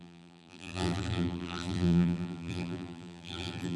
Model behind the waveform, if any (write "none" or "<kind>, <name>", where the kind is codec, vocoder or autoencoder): vocoder, BigVGAN v2